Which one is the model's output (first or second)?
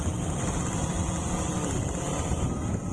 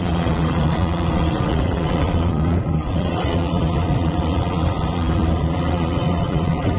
second